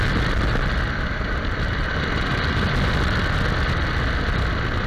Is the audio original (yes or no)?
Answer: yes